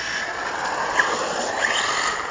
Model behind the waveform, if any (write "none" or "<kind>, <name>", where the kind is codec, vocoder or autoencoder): none